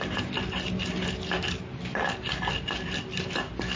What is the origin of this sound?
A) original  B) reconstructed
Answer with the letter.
A